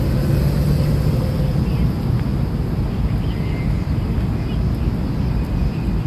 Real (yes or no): yes